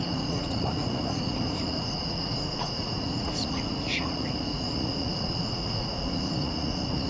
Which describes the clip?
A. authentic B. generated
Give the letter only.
B